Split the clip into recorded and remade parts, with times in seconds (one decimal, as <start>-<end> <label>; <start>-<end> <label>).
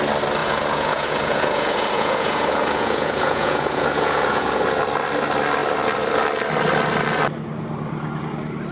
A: 0.0-0.4 recorded; 0.4-4.8 remade; 4.8-8.7 recorded